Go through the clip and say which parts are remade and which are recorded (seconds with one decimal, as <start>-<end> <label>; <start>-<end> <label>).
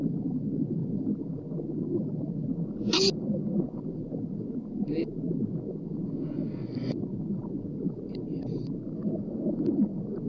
0.0-10.3 recorded